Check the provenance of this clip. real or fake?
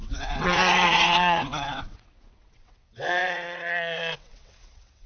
fake